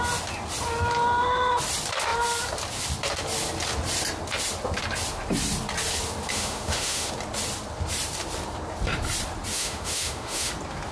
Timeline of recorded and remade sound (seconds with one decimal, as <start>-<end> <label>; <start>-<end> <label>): 0.0-6.3 recorded; 6.3-7.1 remade; 7.1-9.5 recorded; 9.5-10.5 remade; 10.5-10.9 recorded